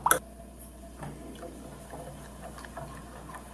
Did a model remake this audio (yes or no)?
no